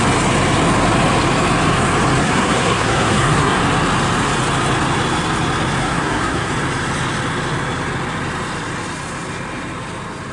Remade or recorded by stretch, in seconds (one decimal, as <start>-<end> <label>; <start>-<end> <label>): 0.0-2.2 recorded; 2.2-3.6 remade; 3.6-5.8 recorded; 5.8-6.5 remade; 6.5-10.3 recorded